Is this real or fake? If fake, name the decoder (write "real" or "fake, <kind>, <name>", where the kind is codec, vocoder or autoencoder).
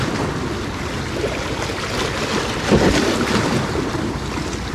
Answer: real